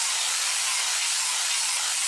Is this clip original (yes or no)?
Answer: yes